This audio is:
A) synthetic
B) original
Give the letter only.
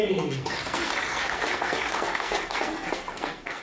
A